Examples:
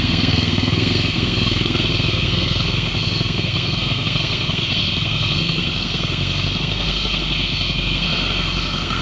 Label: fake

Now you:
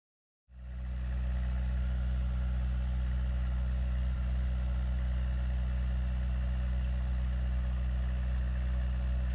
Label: real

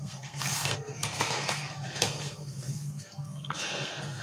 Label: fake